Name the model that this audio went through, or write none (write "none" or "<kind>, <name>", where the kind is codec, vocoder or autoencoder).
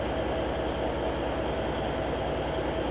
none